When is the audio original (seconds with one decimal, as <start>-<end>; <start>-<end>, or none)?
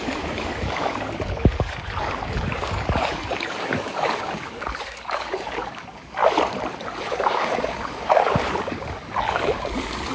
6.2-7.0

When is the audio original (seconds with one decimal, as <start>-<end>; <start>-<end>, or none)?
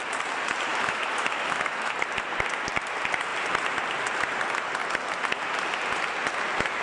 0.0-0.7; 1.9-6.8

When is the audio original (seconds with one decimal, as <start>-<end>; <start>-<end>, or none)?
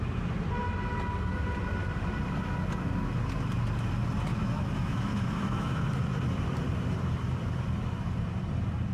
0.0-4.3; 5.9-8.9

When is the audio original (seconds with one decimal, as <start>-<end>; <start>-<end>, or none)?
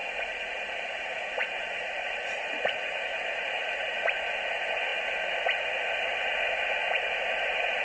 4.2-6.8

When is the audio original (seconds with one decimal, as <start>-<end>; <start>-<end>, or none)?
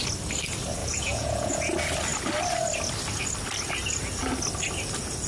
0.0-0.8; 1.5-5.3